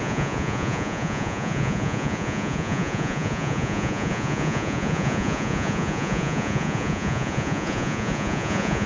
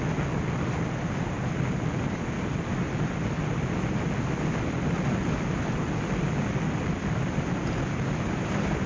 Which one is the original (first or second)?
second